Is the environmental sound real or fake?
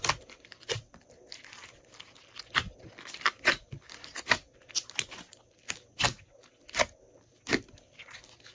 real